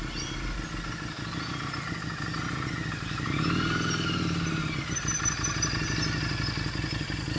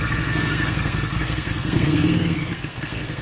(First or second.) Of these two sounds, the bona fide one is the first